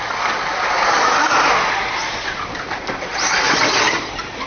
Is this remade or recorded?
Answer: recorded